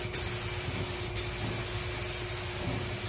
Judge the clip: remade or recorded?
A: recorded